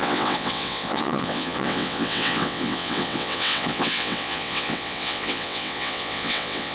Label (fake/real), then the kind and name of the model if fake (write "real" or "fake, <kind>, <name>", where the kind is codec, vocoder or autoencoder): fake, vocoder, WaveNeXt